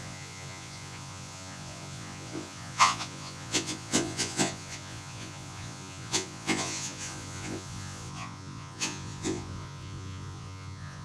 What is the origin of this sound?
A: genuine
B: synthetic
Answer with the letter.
B